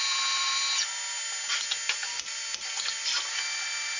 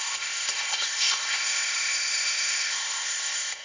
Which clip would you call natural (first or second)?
first